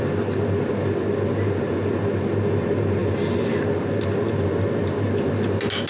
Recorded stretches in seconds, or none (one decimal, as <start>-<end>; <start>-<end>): 0.0-5.9

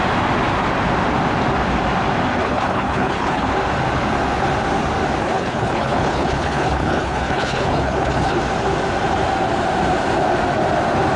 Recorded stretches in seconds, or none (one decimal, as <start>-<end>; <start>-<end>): 0.0-2.4; 3.5-5.2; 8.4-11.2

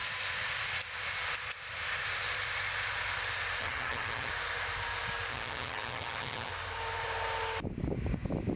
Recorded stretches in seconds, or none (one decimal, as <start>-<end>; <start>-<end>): 0.0-3.6; 4.3-5.3; 6.5-8.6

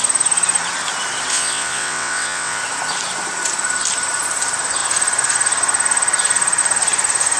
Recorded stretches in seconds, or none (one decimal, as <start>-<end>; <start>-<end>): 0.0-1.3; 2.6-7.4

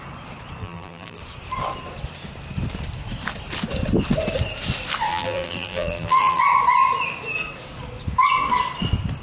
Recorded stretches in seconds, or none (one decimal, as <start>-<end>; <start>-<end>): 0.0-0.6; 1.2-5.1; 6.4-9.2

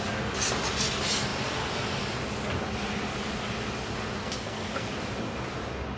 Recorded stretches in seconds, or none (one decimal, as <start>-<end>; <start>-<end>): 0.0-4.2; 4.9-6.0

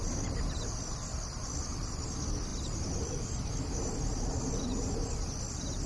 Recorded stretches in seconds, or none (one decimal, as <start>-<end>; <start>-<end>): 0.0-5.9